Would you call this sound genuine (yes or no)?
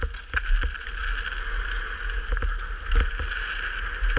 yes